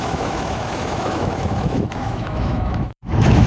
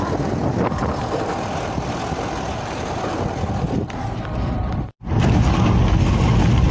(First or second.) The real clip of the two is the second